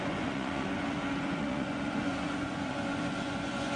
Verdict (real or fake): fake